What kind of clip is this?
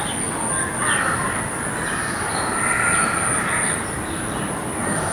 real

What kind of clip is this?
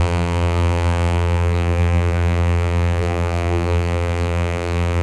fake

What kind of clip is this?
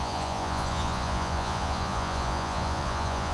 fake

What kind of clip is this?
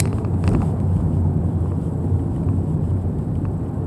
real